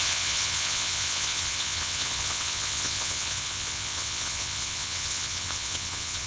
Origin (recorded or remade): remade